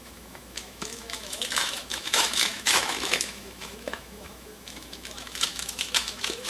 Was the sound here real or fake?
fake